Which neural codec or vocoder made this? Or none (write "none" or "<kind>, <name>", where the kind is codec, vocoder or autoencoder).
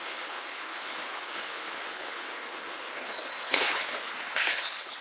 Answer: codec, HILCodec